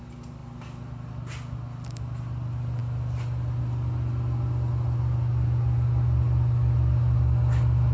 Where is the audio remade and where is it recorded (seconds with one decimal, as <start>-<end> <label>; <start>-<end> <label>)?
0.0-7.9 recorded